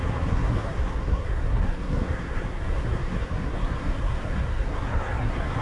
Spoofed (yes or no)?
yes